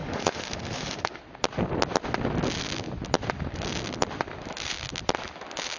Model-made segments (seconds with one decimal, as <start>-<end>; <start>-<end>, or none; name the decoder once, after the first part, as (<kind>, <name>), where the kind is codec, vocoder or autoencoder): 0.0-1.2 (autoencoder, DAC-VAE)